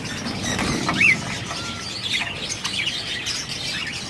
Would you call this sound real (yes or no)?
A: yes